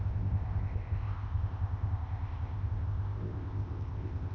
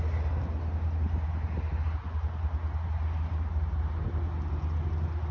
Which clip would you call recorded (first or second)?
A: second